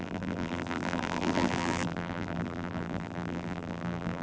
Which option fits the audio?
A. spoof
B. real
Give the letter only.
A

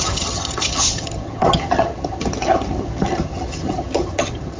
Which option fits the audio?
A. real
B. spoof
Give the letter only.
B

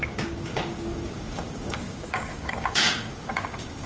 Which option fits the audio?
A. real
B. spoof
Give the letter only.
B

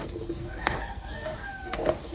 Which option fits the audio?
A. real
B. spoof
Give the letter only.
B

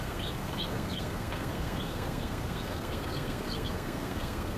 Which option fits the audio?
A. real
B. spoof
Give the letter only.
B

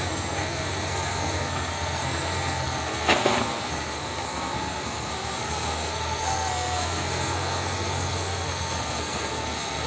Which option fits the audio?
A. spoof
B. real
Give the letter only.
A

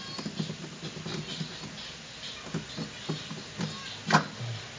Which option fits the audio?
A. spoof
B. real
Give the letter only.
B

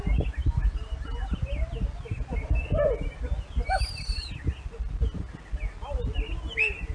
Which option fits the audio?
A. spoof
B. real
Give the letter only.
B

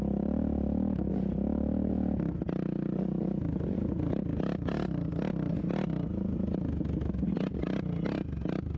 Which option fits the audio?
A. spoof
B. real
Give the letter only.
B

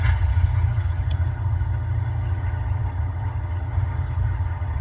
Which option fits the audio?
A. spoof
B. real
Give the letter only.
A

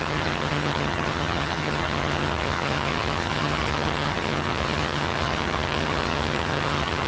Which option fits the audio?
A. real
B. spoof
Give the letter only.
B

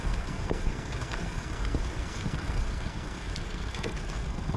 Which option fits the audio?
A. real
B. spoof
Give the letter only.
B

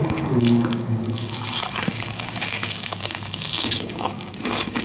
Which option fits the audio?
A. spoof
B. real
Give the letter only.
A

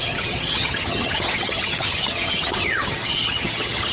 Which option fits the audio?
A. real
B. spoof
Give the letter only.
B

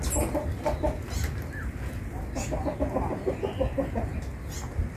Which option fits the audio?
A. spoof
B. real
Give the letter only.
B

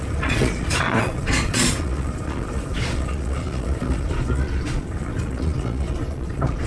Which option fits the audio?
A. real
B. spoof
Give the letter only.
B